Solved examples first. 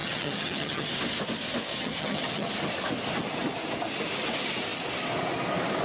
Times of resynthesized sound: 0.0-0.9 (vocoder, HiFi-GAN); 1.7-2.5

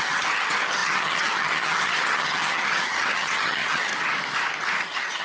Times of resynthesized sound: 0.0-3.9 (vocoder, HiFi-GAN); 4.8-5.2

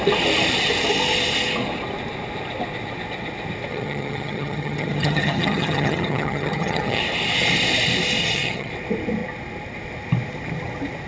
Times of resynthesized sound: 3.7-7.0 (vocoder, HiFi-GAN); 8.2-8.7

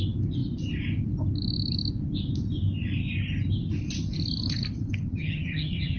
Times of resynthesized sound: 5.1-6.0 (vocoder, HiFi-GAN)